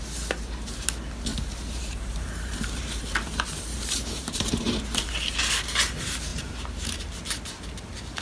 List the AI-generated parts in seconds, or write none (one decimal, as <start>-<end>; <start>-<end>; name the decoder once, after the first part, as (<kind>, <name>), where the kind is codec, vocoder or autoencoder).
1.3-4.8 (vocoder, BigVGAN v2); 6.3-7.0